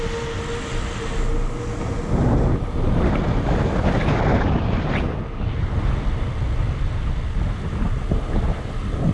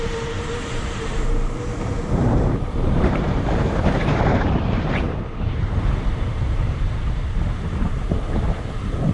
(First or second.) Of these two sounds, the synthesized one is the second